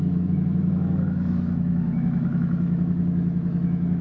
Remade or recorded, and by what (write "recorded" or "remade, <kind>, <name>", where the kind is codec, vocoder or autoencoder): remade, autoencoder, DAC-VAE